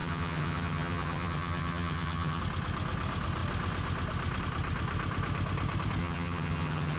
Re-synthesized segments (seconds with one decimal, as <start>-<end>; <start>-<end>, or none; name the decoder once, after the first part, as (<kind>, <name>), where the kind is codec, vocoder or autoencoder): 0.0-2.4 (vocoder, HiFi-GAN); 6.0-7.0